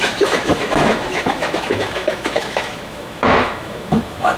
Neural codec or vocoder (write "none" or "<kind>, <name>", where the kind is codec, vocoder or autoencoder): autoencoder, DAC-VAE